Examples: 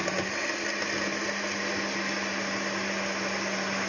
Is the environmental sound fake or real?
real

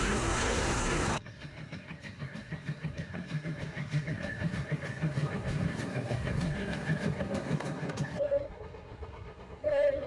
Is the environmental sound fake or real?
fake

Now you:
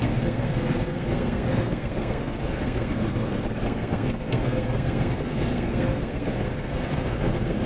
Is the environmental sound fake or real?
fake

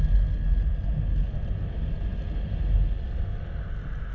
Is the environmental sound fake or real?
real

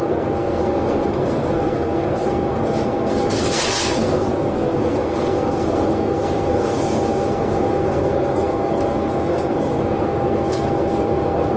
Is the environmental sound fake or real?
fake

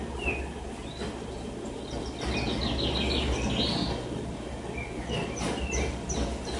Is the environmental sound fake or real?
real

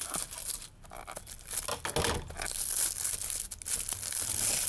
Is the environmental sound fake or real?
real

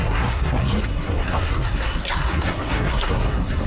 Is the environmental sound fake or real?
fake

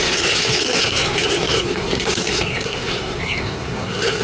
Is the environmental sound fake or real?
fake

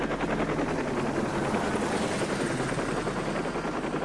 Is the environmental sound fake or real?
real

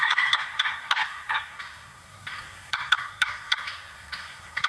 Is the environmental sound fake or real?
fake